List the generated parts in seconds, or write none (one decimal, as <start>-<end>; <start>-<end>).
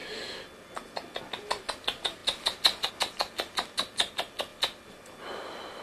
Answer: none